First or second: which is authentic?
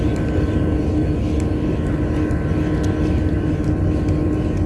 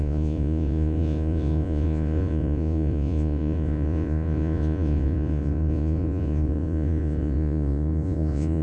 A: first